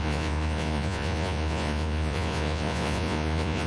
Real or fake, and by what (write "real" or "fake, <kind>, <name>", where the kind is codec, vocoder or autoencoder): fake, vocoder, Vocos